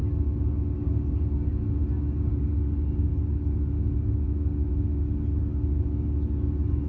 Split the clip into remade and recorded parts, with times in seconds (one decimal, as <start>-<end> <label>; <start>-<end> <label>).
0.0-6.9 recorded